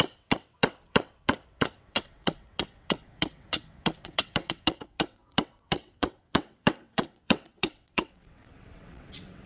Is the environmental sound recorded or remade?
remade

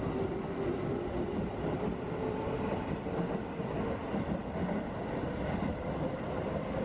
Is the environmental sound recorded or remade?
recorded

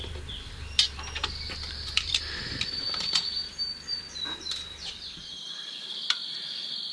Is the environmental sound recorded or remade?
remade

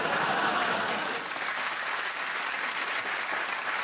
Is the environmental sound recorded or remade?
recorded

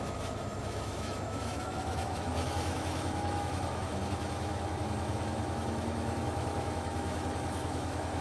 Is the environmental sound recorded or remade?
remade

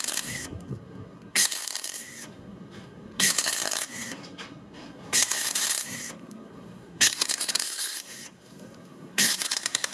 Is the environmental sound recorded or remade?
remade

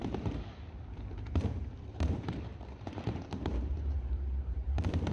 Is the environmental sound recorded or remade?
remade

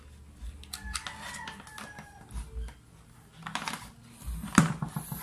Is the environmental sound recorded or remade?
recorded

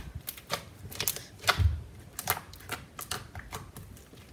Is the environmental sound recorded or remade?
recorded